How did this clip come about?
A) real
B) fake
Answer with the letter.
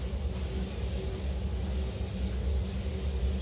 A